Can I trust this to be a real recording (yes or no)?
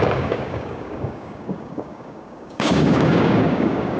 no